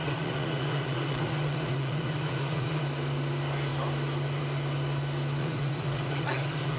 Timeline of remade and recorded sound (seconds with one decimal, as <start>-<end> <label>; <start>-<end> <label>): 0.0-2.8 remade; 2.8-5.4 recorded; 5.4-6.8 remade